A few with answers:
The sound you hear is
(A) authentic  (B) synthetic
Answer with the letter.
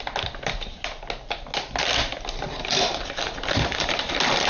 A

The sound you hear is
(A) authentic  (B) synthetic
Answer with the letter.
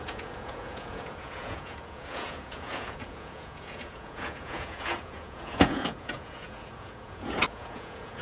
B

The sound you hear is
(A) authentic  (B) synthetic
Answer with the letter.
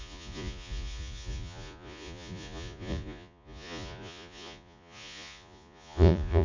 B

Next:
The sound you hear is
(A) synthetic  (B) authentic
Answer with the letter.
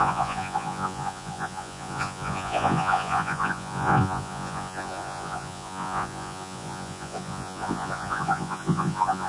A